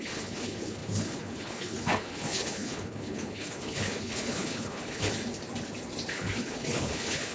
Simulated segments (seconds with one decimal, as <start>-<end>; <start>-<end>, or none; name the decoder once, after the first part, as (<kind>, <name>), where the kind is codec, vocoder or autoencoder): 0.0-5.1 (codec, HILCodec); 6.1-7.3